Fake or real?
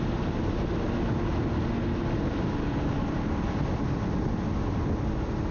real